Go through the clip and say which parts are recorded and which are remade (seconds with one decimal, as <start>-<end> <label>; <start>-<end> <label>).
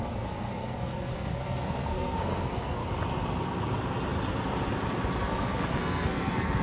0.0-2.8 remade; 2.8-5.2 recorded; 5.2-6.6 remade